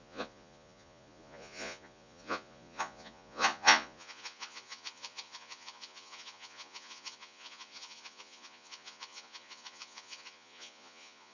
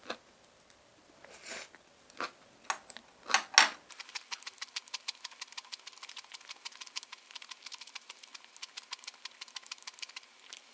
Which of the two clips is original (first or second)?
second